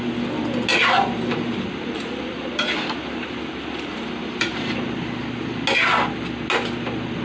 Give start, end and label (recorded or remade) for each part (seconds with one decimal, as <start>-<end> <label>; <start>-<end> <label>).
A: 0.0-0.7 recorded; 0.7-5.0 remade; 5.0-7.2 recorded